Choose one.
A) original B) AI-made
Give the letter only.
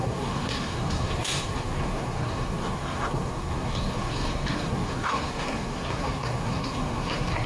B